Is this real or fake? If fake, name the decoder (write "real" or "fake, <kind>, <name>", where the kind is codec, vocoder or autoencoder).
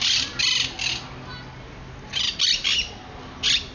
real